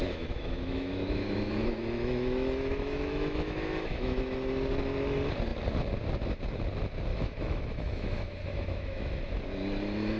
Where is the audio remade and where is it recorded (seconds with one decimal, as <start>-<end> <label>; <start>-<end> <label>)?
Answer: 0.0-4.2 remade; 4.2-7.1 recorded; 7.1-9.1 remade; 9.1-10.2 recorded